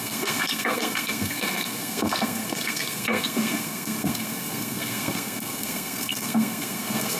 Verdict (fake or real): fake